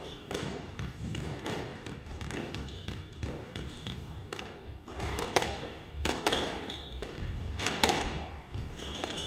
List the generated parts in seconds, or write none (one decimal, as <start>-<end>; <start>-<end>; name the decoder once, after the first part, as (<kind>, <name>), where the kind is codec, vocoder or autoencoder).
0.0-9.3 (codec, DAC)